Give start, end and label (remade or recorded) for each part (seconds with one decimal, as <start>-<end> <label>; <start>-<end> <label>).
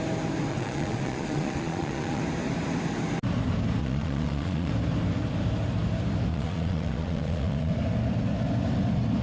0.0-0.5 recorded; 0.5-2.2 remade; 2.2-3.8 recorded; 3.8-4.7 remade; 4.7-6.3 recorded; 6.3-7.7 remade; 7.7-9.2 recorded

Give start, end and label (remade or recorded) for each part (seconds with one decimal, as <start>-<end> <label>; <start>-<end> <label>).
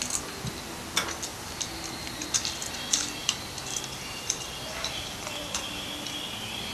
0.0-3.2 recorded; 3.2-6.7 remade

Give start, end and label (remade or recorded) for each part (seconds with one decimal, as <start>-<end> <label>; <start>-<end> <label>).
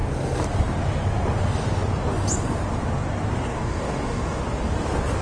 0.0-3.5 recorded; 3.5-4.4 remade; 4.4-5.2 recorded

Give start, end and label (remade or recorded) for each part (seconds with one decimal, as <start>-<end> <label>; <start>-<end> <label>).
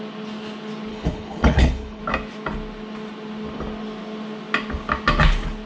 0.0-0.9 recorded; 0.9-2.0 remade; 2.0-5.7 recorded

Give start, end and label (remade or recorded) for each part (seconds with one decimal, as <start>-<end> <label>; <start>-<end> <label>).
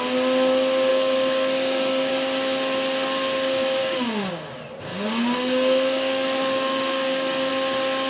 0.0-0.9 recorded; 0.9-2.1 remade; 2.1-3.8 recorded; 3.8-4.3 remade; 4.3-4.9 recorded; 4.9-7.5 remade; 7.5-8.1 recorded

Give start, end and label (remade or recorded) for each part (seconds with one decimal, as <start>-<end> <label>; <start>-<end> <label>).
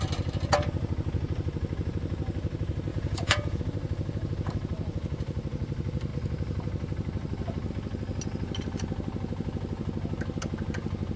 0.0-2.9 recorded; 2.9-3.6 remade; 3.6-11.2 recorded